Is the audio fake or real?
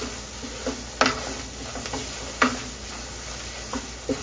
real